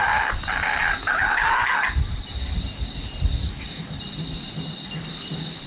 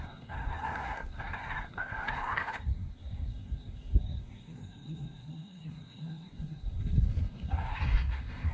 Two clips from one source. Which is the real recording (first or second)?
first